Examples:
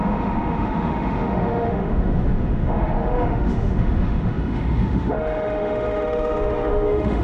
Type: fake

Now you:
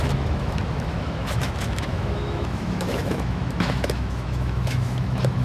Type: fake